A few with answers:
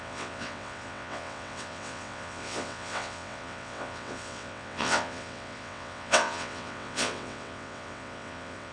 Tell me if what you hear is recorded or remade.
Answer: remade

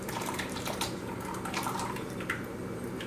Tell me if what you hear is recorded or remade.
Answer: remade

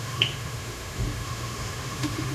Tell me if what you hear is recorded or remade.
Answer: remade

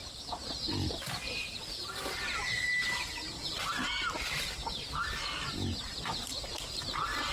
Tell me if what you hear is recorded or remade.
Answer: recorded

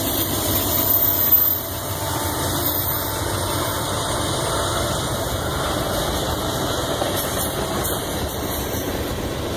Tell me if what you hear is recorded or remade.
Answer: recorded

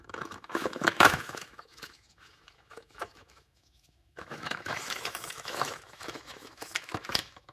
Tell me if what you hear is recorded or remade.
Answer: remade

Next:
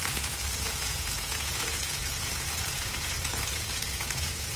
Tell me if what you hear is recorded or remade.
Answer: remade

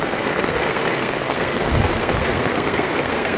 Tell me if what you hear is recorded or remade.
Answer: remade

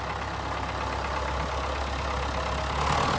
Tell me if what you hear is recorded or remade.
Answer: recorded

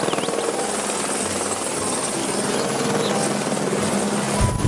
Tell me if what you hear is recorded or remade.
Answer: recorded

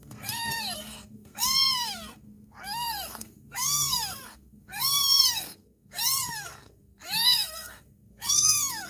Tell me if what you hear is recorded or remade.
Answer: remade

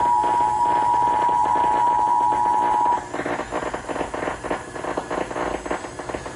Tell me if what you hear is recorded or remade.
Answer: recorded